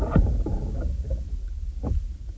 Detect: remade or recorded recorded